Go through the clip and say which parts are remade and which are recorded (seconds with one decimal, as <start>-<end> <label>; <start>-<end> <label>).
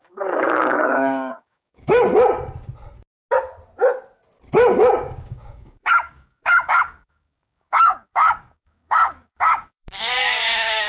0.0-2.1 remade; 2.1-5.0 recorded; 5.0-10.9 remade